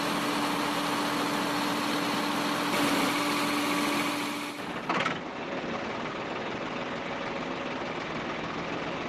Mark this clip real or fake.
real